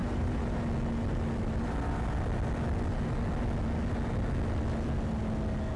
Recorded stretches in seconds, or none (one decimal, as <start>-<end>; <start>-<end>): 0.6-5.8